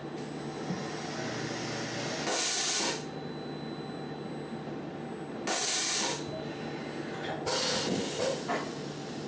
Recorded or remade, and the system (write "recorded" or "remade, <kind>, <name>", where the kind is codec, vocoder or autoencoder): recorded